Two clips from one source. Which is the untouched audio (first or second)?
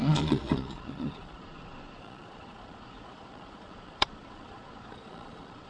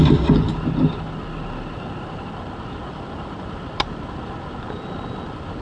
second